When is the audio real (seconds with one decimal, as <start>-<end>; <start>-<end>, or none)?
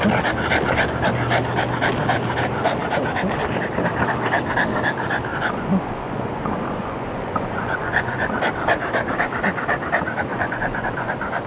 0.0-5.3; 8.4-10.3; 11.1-11.5